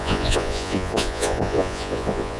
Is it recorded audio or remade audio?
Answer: remade